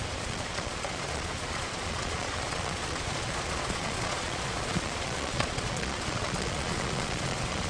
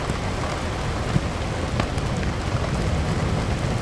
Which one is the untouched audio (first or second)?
second